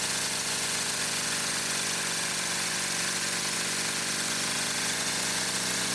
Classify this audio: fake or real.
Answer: fake